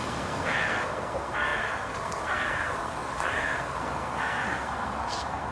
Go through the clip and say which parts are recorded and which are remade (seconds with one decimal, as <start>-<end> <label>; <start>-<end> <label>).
0.0-5.5 remade